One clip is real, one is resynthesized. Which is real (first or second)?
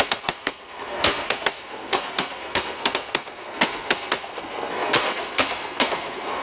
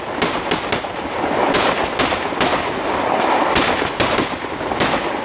second